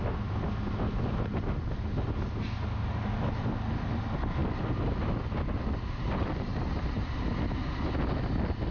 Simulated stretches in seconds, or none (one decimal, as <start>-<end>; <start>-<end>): none